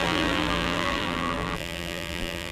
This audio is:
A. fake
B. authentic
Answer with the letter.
A